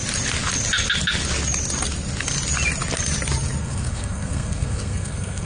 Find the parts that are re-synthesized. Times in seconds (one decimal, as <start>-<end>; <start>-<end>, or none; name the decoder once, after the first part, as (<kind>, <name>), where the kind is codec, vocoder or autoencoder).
3.6-5.5 (codec, SNAC)